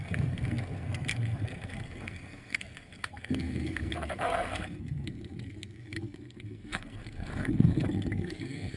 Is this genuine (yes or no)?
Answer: no